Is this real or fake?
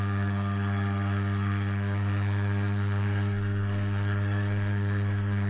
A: fake